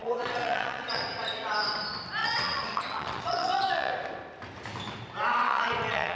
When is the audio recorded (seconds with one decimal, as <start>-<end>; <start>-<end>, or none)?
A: 1.0-2.2; 3.9-5.4